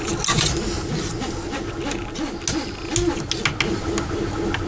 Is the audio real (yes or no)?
yes